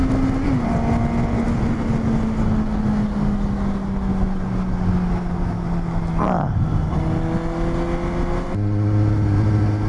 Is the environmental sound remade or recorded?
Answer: recorded